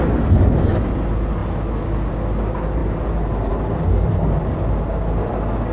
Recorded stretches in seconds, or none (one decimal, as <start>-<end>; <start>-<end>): 0.0-5.7